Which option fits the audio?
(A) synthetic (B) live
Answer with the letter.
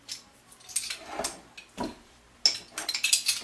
B